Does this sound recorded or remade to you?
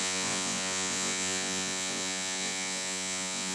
remade